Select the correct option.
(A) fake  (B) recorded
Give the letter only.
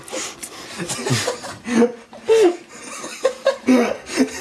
B